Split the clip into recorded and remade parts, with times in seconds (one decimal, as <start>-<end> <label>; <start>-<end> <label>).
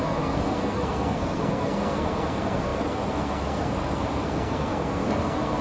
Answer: 0.0-5.6 remade